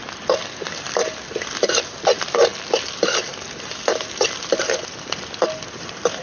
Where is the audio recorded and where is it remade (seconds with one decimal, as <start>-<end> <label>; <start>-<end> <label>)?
0.0-6.2 recorded